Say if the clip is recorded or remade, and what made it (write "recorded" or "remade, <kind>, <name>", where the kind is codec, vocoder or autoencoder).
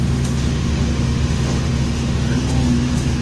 remade, autoencoder, DAC-VAE